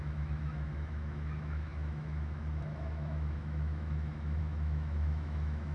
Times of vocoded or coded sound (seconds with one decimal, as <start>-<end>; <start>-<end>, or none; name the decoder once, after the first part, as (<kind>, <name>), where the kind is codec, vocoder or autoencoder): 0.0-5.7 (autoencoder, DAC-VAE)